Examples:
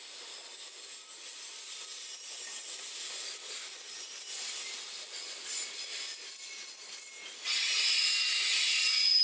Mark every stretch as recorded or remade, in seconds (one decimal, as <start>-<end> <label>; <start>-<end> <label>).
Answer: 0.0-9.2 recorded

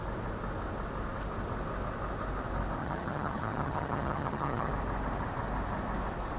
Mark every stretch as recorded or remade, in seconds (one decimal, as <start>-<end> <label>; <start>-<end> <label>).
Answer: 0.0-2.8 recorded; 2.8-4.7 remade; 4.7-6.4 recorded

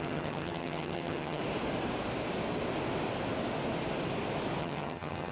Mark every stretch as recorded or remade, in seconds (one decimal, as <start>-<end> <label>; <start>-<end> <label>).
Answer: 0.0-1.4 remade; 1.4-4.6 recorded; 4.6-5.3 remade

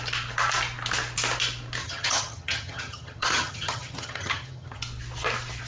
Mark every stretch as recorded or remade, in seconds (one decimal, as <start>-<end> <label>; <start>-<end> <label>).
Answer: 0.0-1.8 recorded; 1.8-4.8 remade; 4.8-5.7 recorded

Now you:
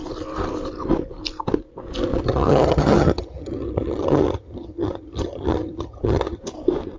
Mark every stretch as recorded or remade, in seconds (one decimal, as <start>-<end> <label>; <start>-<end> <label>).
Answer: 0.0-2.2 recorded; 2.2-6.4 remade; 6.4-7.0 recorded